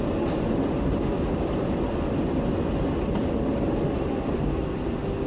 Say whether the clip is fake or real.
real